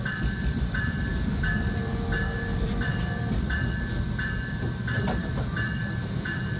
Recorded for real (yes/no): no